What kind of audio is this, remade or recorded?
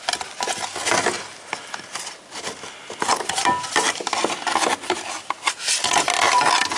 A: recorded